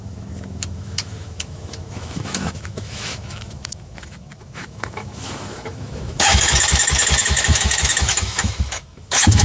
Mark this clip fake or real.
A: fake